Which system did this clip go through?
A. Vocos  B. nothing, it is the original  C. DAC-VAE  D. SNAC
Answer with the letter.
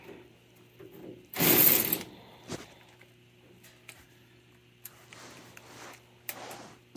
B